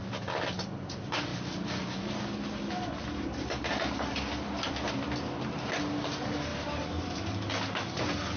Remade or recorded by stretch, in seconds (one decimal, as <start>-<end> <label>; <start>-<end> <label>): 0.0-8.4 recorded